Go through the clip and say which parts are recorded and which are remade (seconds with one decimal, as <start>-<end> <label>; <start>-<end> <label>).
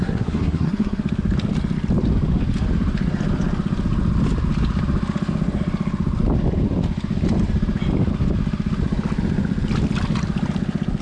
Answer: 0.0-1.0 remade; 1.0-11.0 recorded